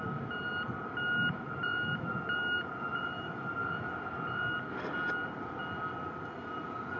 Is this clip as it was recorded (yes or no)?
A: yes